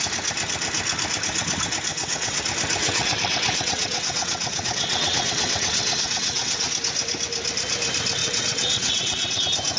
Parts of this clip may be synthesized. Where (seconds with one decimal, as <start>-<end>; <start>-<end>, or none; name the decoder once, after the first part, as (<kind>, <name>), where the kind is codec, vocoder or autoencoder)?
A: 1.9-2.4 (vocoder, WaveNeXt); 2.8-6.7; 8.2-9.4